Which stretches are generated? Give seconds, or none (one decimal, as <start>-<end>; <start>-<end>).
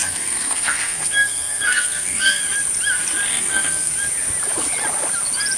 0.0-2.4; 3.3-3.9